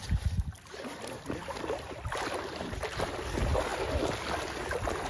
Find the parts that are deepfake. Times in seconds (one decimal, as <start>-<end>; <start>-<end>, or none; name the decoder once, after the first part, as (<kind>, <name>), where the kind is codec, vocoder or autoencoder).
0.0-3.1 (vocoder, BigVGAN v2)